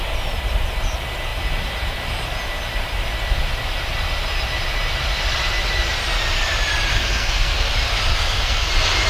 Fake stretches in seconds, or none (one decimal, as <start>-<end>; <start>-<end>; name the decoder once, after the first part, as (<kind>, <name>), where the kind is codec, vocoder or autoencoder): 6.9-7.7 (codec, SNAC); 8.1-8.7